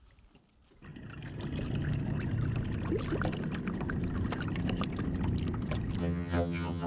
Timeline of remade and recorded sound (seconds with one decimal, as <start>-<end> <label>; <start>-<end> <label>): 0.0-6.0 recorded; 6.0-6.9 remade